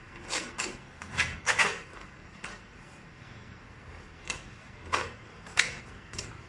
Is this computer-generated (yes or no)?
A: yes